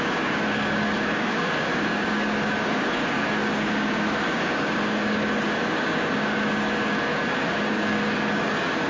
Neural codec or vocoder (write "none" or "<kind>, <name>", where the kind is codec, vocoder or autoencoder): codec, DAC